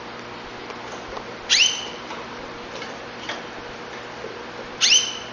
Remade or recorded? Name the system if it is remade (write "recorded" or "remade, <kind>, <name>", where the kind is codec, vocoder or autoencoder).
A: remade, vocoder, BigVGAN v2